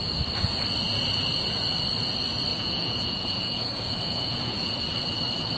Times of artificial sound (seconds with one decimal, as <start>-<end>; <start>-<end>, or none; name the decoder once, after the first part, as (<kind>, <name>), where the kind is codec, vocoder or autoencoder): 2.5-4.8 (vocoder, Vocos)